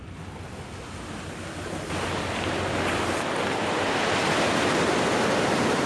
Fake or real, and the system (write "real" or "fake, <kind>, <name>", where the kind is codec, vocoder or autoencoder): real